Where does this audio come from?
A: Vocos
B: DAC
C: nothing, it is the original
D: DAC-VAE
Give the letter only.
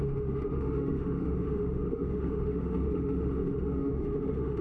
D